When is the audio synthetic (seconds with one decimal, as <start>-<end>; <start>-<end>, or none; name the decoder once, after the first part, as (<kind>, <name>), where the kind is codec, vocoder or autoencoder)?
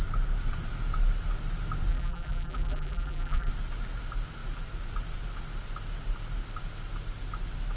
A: 1.9-3.5 (vocoder, BigVGAN v2)